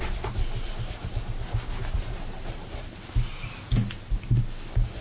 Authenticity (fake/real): real